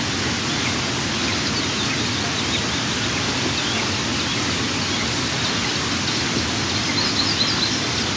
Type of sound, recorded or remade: recorded